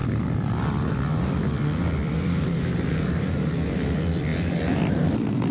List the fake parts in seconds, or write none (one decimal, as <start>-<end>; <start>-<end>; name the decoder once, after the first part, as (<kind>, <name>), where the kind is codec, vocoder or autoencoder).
1.9-5.5 (vocoder, BigVGAN v2)